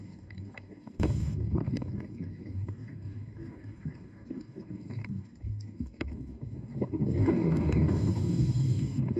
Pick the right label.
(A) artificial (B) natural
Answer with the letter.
A